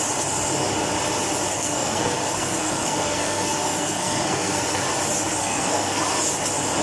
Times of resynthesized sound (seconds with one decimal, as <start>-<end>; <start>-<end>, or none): 1.5-4.8; 5.4-6.0